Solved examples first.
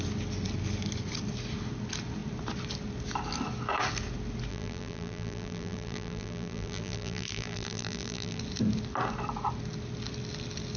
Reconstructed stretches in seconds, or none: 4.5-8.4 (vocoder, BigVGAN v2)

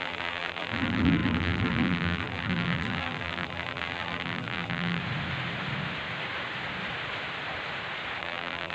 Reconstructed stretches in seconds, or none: 0.0-5.0 (vocoder, BigVGAN v2); 8.2-8.7

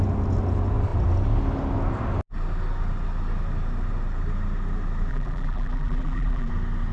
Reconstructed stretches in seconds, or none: 5.1-6.5 (vocoder, BigVGAN v2)

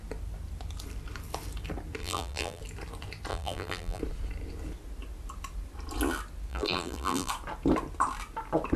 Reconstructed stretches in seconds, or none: 2.0-2.6 (vocoder, BigVGAN v2); 3.3-4.0; 6.5-7.3